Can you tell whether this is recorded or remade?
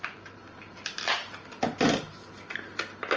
recorded